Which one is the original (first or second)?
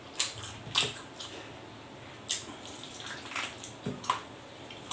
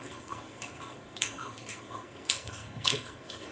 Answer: first